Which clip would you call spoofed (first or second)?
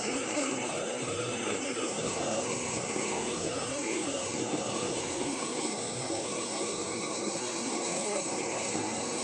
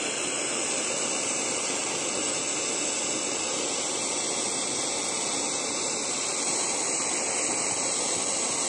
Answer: first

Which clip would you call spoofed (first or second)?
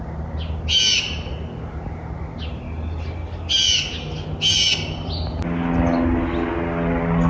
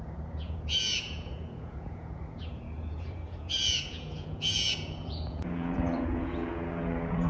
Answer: second